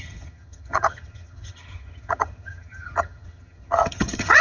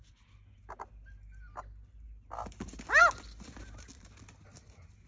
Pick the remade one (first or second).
first